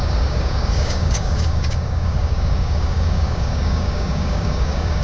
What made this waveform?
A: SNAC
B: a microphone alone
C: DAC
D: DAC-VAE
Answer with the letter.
C